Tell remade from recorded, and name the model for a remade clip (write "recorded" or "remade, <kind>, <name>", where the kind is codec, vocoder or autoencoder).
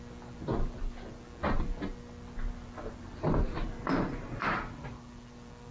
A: recorded